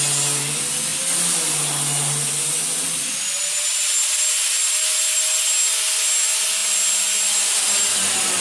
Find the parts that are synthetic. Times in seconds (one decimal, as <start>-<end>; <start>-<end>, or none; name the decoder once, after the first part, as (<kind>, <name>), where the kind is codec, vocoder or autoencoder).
none